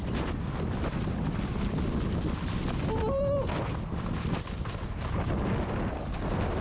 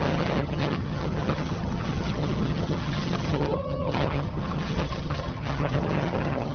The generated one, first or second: second